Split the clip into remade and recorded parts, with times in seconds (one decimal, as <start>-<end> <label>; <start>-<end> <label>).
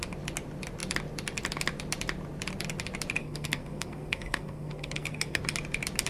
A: 0.0-3.2 recorded; 3.2-5.4 remade; 5.4-6.1 recorded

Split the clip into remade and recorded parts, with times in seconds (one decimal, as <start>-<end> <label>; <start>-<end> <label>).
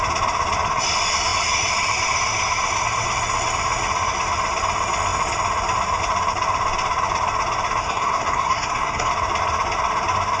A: 0.0-7.8 recorded; 7.8-9.1 remade; 9.1-10.4 recorded